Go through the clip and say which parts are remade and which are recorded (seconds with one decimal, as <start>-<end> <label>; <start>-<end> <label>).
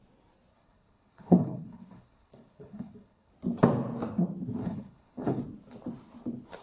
0.0-0.5 recorded; 0.5-3.3 remade; 3.3-4.6 recorded; 4.6-5.4 remade; 5.4-6.6 recorded